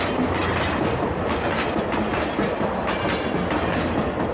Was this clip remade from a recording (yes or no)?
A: no